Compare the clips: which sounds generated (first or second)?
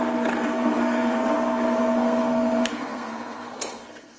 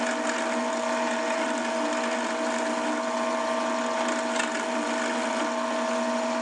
first